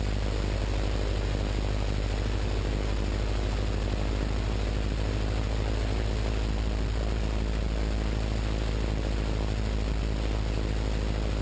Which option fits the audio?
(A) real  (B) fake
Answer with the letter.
A